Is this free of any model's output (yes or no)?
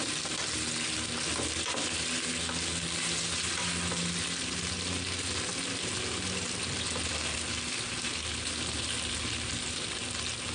yes